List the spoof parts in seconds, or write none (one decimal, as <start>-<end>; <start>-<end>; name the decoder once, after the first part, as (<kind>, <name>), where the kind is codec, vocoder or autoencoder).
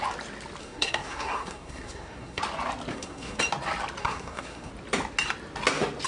0.6-2.4 (codec, SNAC); 2.9-3.4; 4.0-4.7